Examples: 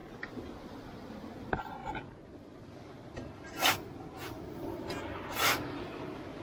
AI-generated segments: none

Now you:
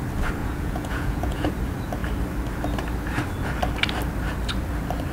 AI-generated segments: 0.4-1.5 (vocoder, Vocos)